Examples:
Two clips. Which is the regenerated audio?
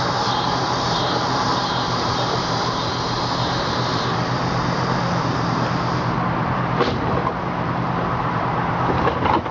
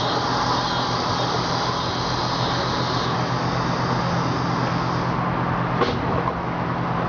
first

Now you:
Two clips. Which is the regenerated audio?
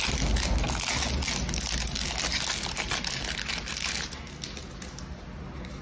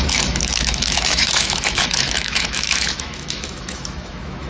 second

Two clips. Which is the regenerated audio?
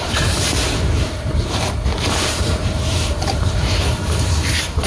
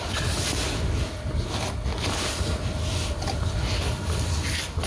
first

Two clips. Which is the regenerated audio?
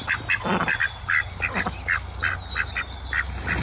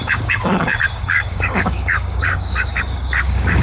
second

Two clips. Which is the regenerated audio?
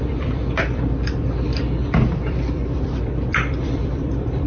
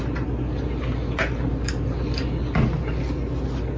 first